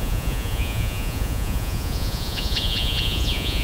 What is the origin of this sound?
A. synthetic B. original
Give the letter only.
A